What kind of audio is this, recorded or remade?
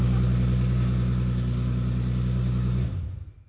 recorded